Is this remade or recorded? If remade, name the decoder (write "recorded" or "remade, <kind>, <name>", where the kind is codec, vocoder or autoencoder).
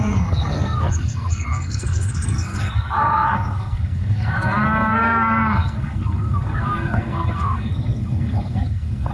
remade, codec, SNAC